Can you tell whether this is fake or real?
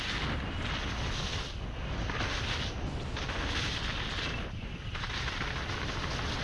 real